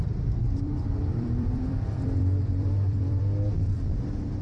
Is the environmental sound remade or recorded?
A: remade